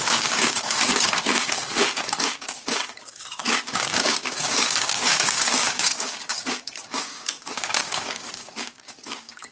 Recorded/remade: remade